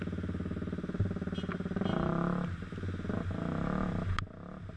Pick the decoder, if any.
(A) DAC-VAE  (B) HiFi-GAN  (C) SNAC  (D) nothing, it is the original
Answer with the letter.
D